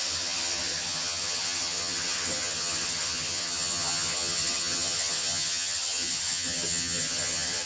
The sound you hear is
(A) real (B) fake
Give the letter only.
B